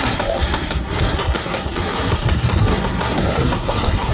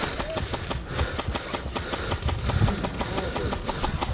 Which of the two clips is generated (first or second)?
first